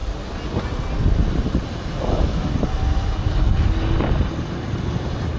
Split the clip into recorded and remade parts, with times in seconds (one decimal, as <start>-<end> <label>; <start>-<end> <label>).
0.0-5.4 recorded